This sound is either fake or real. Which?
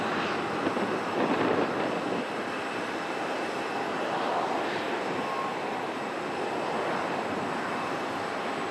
real